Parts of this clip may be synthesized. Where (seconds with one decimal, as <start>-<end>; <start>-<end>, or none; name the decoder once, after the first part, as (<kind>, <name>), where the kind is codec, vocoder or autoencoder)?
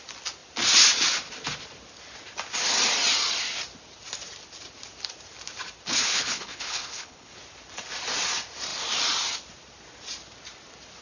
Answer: 5.9-7.3 (codec, HILCodec)